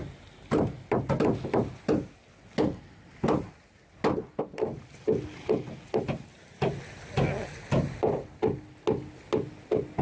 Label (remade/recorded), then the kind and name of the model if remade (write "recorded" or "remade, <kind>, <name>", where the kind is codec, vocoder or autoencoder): recorded